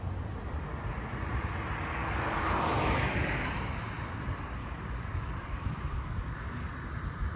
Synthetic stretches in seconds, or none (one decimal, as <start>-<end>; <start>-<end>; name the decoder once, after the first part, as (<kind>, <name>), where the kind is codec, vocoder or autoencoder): 1.9-3.5 (codec, DAC); 4.6-6.7